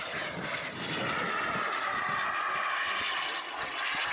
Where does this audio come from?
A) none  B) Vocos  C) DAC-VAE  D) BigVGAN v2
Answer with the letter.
D